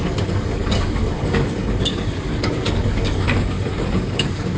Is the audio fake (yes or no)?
yes